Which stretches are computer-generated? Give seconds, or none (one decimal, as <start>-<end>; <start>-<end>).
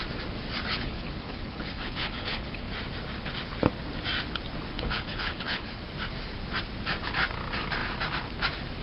0.7-2.7; 4.7-5.8